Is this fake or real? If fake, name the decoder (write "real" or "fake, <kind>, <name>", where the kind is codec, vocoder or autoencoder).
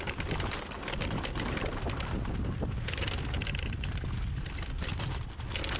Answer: real